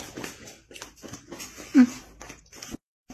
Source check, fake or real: real